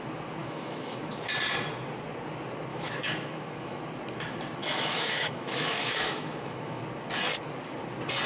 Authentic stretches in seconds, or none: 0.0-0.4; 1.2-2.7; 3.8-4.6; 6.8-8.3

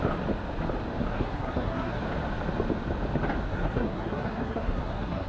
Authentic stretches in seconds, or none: 0.0-1.1; 2.0-3.5

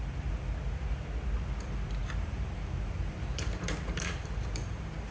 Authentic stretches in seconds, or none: 0.0-2.0

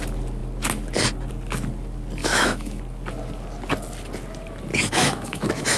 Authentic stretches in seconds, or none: 0.0-2.2; 2.8-4.7

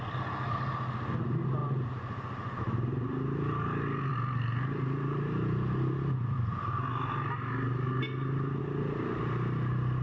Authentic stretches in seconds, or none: 0.0-10.0

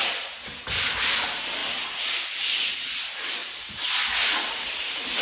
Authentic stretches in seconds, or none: 0.0-3.4